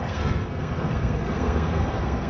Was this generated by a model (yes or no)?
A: yes